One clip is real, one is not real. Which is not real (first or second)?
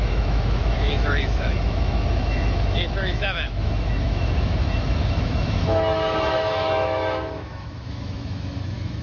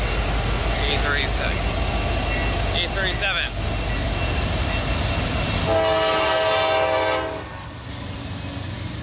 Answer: first